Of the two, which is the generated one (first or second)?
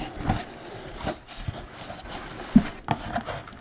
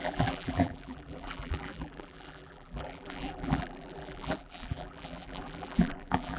second